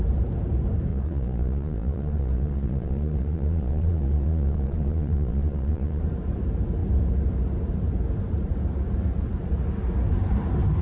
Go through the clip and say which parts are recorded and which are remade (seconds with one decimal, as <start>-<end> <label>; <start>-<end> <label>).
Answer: 0.0-0.9 recorded; 0.9-6.0 remade; 6.0-10.8 recorded